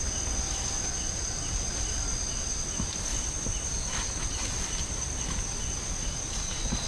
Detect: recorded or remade recorded